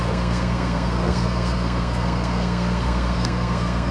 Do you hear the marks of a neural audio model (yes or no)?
yes